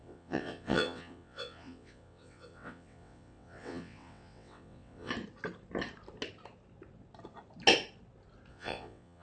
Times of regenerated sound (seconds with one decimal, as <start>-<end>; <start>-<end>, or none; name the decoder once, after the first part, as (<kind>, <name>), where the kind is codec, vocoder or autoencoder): 0.0-5.1 (vocoder, WaveNeXt); 8.5-9.2